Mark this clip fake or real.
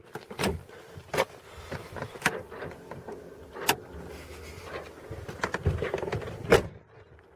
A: real